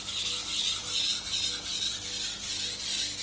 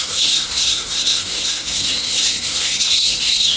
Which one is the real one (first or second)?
first